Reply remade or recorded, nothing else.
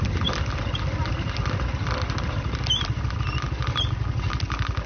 recorded